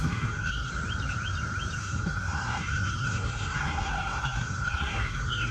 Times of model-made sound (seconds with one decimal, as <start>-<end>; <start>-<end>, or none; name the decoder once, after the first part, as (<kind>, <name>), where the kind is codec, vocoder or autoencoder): 0.0-0.7 (codec, SNAC); 1.8-5.5